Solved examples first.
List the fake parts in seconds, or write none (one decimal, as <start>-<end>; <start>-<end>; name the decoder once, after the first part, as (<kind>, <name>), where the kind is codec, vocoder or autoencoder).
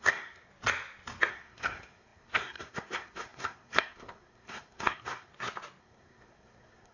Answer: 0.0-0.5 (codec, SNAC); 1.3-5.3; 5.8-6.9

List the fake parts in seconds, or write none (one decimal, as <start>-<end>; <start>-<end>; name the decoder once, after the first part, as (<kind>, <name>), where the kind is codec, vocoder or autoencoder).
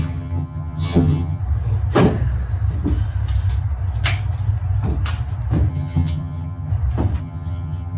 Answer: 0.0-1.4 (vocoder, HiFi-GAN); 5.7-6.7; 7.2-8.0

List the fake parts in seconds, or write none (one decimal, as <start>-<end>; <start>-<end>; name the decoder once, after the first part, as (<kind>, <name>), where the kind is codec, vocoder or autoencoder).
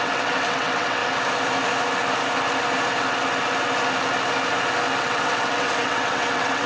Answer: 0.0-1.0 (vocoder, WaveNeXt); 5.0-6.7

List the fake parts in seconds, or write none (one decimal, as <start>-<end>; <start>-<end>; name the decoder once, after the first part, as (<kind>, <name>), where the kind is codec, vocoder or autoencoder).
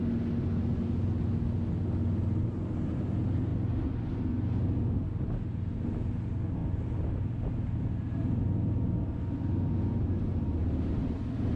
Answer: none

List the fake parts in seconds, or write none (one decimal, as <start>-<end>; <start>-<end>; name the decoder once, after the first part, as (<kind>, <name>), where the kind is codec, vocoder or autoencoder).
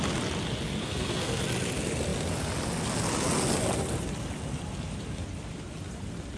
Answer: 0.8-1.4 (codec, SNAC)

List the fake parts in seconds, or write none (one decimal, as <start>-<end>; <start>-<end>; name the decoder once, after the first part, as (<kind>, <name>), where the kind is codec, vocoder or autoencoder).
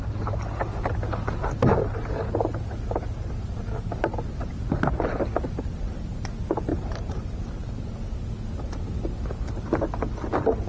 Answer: 6.7-7.9 (vocoder, BigVGAN v2)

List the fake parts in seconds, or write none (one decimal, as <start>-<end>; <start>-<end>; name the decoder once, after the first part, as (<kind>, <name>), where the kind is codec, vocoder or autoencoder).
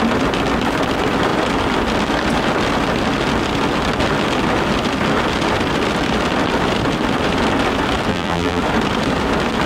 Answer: 8.1-8.6 (vocoder, BigVGAN v2)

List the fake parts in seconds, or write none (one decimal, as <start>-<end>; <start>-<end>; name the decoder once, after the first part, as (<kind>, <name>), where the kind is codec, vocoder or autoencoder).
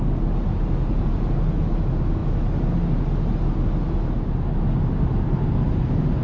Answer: none